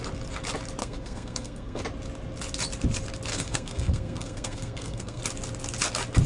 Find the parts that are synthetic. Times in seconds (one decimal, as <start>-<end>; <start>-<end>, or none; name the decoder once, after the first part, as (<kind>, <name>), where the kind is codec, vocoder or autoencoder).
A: 0.8-1.8 (codec, SNAC); 3.3-5.2